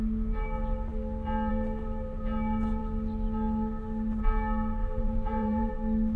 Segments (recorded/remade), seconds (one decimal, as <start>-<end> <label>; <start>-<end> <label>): 0.0-4.8 recorded; 4.8-5.7 remade; 5.7-6.2 recorded

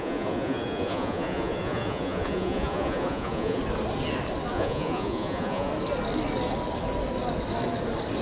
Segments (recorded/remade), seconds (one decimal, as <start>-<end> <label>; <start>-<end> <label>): 0.0-3.6 remade; 3.6-4.5 recorded; 4.5-5.7 remade; 5.7-8.2 recorded

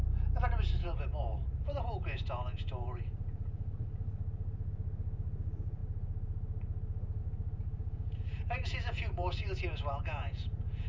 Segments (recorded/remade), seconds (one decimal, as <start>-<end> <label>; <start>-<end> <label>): 0.0-5.8 remade; 5.8-7.2 recorded; 7.2-10.9 remade